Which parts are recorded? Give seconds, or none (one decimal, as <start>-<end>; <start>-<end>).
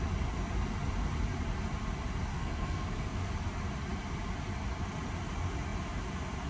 0.0-2.3; 3.3-6.5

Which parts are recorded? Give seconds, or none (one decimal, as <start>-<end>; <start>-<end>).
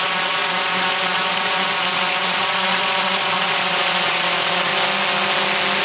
4.7-5.8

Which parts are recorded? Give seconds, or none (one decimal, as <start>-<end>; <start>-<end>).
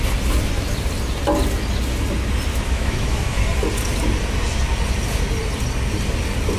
0.0-2.5; 3.4-6.6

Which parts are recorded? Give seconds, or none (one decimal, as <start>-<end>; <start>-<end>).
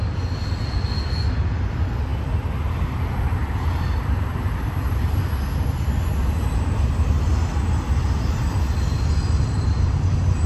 0.0-10.5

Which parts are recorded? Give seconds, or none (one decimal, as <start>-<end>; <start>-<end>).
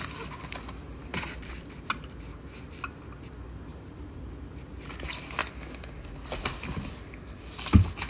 0.0-1.1; 2.6-3.7; 4.3-8.1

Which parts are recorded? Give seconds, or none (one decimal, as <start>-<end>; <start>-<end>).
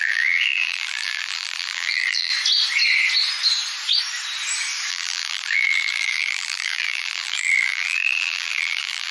2.3-4.9